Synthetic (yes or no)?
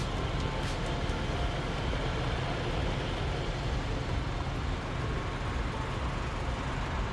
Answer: no